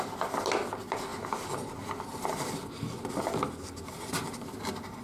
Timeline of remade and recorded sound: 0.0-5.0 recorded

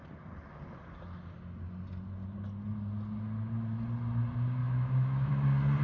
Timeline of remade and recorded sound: 0.0-4.6 recorded; 4.6-5.3 remade; 5.3-5.8 recorded